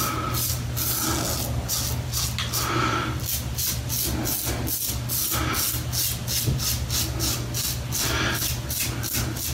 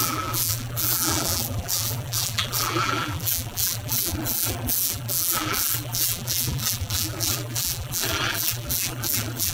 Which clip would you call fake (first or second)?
second